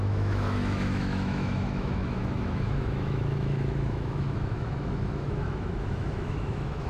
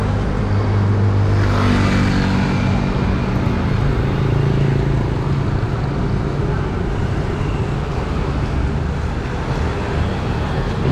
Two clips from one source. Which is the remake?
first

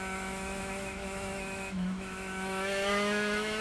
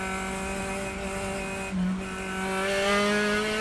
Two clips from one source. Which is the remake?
first